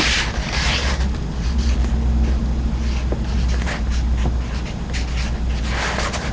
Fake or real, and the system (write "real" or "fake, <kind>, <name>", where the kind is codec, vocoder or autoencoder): real